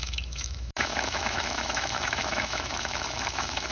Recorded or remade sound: remade